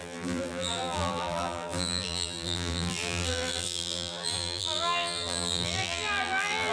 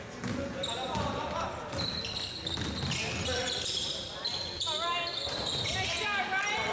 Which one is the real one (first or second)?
second